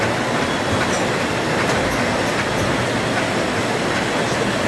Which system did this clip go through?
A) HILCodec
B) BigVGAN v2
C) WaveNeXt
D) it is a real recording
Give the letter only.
D